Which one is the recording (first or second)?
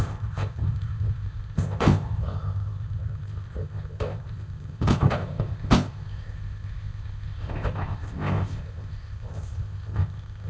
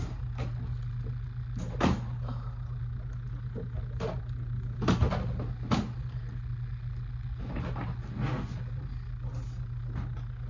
second